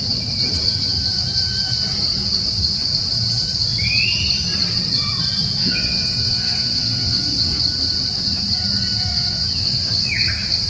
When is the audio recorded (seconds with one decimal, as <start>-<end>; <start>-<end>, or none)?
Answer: 0.0-5.6; 7.6-9.1; 10.0-10.7